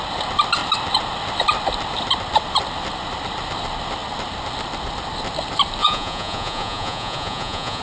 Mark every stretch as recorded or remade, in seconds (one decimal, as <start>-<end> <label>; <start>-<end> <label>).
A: 0.0-5.8 recorded; 5.8-7.8 remade